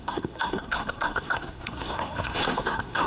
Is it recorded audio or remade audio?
remade